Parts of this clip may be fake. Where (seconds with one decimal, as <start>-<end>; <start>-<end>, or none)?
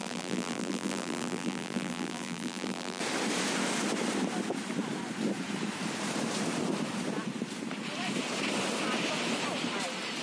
0.0-3.0